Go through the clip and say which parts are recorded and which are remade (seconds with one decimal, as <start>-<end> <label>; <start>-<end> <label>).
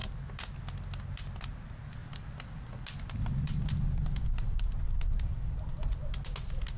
0.0-0.6 remade; 0.6-2.0 recorded; 2.0-6.1 remade; 6.1-6.8 recorded